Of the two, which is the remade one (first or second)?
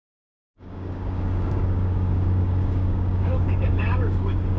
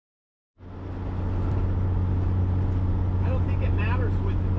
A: first